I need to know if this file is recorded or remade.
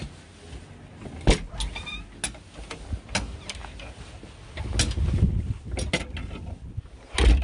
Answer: recorded